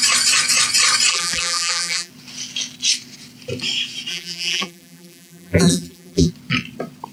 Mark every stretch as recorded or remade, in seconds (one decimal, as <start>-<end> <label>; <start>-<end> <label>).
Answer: 0.0-1.1 recorded; 1.1-2.1 remade; 2.1-4.1 recorded; 4.1-6.3 remade; 6.3-7.1 recorded